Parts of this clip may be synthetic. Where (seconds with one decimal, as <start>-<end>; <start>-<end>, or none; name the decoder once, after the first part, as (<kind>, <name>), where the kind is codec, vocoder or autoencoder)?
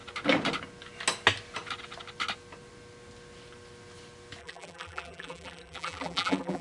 4.4-6.6 (vocoder, BigVGAN v2)